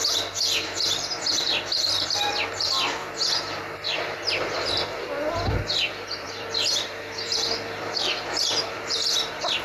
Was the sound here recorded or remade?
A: remade